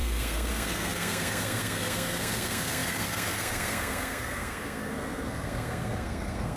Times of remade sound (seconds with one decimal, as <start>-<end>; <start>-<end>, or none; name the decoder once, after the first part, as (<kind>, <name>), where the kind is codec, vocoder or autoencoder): 0.0-6.6 (codec, SNAC)